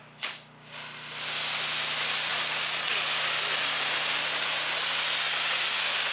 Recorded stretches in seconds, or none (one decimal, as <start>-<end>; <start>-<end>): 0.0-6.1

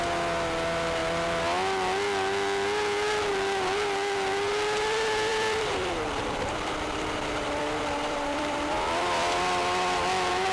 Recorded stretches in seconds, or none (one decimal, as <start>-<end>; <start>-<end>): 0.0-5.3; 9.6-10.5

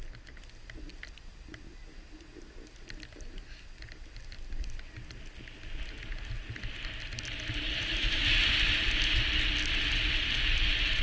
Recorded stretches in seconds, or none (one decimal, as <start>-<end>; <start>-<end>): 0.0-11.0